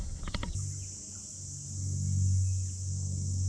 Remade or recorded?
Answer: recorded